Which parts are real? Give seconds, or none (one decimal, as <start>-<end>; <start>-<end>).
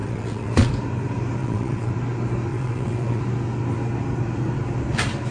0.7-1.4; 1.9-2.5; 3.2-5.3